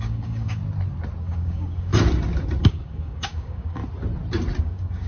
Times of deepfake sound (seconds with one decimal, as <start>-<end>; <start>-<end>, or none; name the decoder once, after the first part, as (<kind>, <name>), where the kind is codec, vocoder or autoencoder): 0.0-0.6 (codec, DAC); 1.2-1.9; 2.6-3.8; 4.6-5.1